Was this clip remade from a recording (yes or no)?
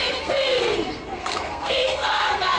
yes